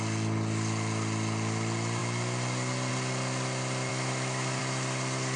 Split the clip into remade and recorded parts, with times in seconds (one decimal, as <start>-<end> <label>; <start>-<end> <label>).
0.0-3.9 recorded; 3.9-4.6 remade; 4.6-5.4 recorded